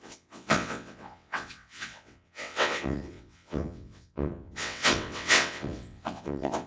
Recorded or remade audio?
remade